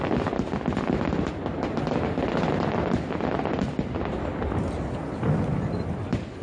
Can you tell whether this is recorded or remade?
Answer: recorded